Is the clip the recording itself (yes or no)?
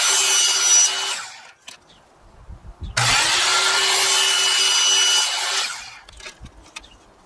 yes